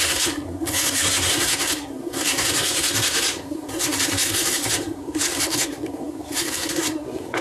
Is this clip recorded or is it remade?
remade